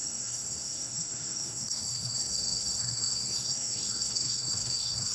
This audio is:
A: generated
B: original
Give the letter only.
A